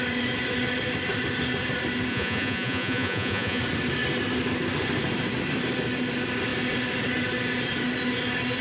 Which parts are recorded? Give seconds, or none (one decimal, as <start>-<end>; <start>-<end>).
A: 0.0-2.1; 3.6-8.6